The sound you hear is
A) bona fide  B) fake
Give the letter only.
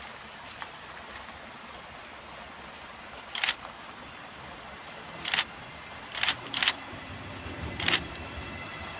A